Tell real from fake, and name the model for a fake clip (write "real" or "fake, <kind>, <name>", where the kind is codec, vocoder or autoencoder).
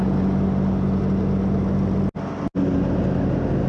real